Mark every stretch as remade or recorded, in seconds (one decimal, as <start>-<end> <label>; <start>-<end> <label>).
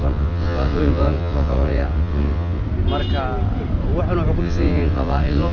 0.0-2.6 remade; 2.6-4.4 recorded; 4.4-5.5 remade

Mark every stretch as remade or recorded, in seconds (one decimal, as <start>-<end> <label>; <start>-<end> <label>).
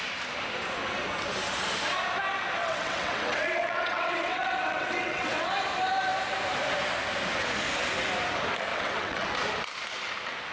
0.0-2.6 recorded; 2.6-5.5 remade; 5.5-8.7 recorded; 8.7-9.3 remade; 9.3-10.5 recorded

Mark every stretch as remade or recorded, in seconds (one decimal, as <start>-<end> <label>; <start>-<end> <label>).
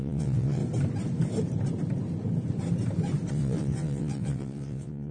0.0-0.6 remade; 0.6-3.3 recorded; 3.3-5.1 remade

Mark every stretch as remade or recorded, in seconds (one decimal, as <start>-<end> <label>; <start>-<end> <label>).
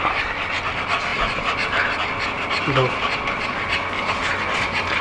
0.0-5.0 recorded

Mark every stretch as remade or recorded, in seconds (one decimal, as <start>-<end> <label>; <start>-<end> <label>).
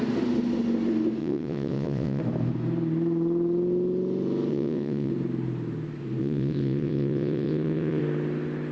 0.0-1.2 recorded; 1.2-2.2 remade; 2.2-4.5 recorded; 4.5-5.1 remade; 5.1-6.2 recorded; 6.2-8.0 remade; 8.0-8.7 recorded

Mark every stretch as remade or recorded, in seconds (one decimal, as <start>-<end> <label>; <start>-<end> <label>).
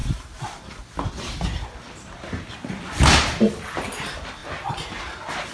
0.0-5.5 recorded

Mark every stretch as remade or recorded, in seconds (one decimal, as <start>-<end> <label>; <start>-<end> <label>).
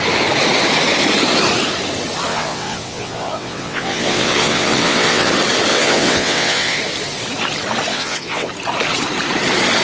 0.0-2.3 recorded; 2.3-5.3 remade; 5.3-5.7 recorded; 5.7-6.8 remade; 6.8-7.9 recorded; 7.9-8.5 remade; 8.5-9.8 recorded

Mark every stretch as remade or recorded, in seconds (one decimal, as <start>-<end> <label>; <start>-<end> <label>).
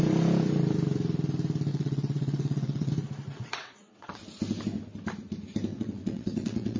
0.0-1.7 recorded; 1.7-2.9 remade; 2.9-3.3 recorded; 3.3-4.2 remade; 4.2-5.7 recorded; 5.7-6.8 remade